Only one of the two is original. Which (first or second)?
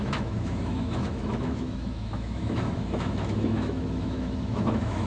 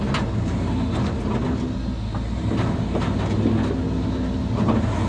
second